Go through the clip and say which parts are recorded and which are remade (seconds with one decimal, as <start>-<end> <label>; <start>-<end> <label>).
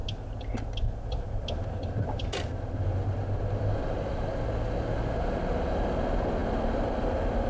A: 0.0-7.5 recorded